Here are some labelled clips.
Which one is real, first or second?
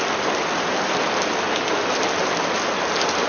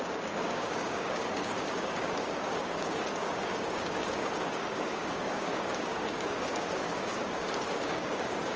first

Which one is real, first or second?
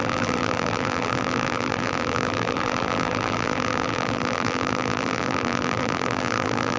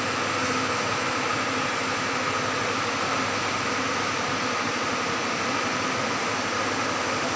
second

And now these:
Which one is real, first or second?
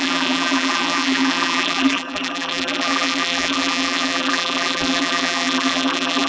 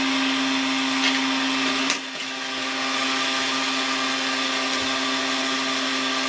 second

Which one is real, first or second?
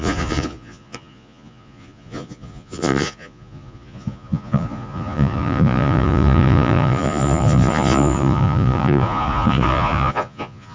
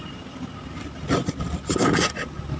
second